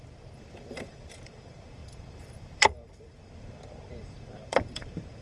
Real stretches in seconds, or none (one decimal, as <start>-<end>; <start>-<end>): none